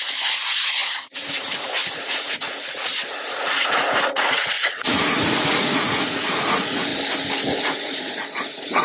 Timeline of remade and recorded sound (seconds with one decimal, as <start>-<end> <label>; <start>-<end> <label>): 0.0-6.9 remade; 6.9-7.6 recorded; 7.6-8.8 remade